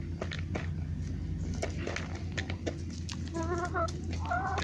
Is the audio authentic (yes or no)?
yes